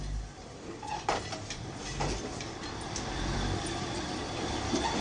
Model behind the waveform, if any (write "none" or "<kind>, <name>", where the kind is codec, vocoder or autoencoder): vocoder, BigVGAN v2